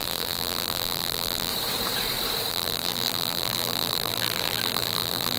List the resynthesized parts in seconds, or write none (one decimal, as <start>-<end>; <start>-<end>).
0.0-1.5; 2.5-5.4